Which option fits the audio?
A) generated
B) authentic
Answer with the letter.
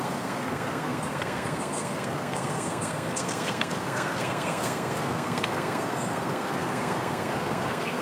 A